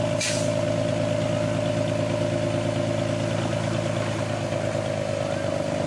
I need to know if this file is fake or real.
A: real